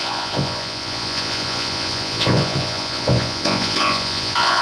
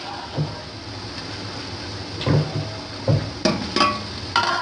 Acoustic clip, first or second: second